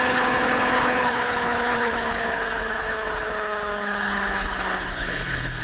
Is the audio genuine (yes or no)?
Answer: no